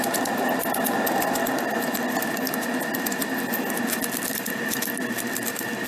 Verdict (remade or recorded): recorded